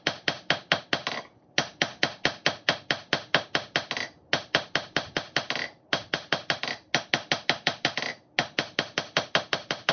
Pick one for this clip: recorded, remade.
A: recorded